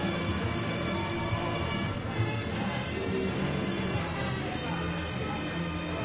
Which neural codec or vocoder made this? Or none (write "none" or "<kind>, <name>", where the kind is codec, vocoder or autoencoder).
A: none